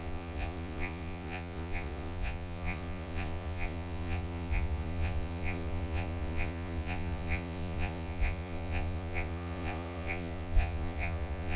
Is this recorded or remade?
remade